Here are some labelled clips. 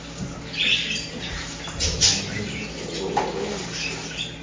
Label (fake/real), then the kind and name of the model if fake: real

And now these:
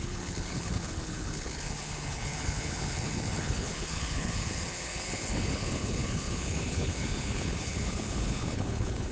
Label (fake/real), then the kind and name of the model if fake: fake, codec, HILCodec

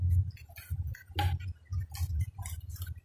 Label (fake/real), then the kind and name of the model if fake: real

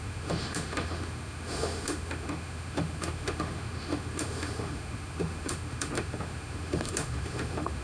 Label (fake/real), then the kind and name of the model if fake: fake, autoencoder, DAC-VAE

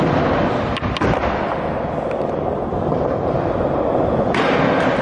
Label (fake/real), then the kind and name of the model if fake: real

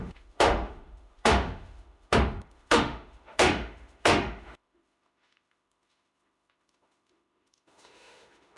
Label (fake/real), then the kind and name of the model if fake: fake, autoencoder, DAC-VAE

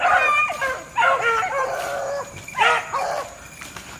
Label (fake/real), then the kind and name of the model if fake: real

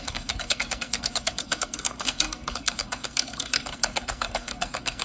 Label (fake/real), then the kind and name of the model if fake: fake, codec, SNAC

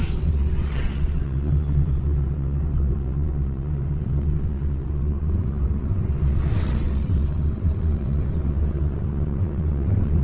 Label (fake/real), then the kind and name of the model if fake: fake, vocoder, WaveNeXt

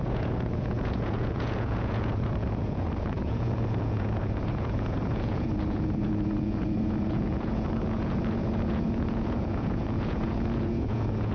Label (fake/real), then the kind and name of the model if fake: fake, vocoder, Vocos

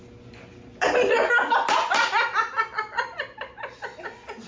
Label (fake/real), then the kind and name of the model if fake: real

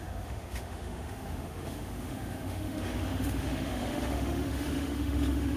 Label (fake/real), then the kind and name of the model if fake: fake, autoencoder, DAC-VAE